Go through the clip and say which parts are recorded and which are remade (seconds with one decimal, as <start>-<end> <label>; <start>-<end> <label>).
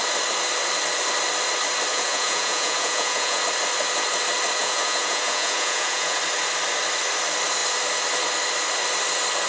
0.0-1.9 recorded; 1.9-3.4 remade; 3.4-4.6 recorded; 4.6-6.2 remade; 6.2-9.5 recorded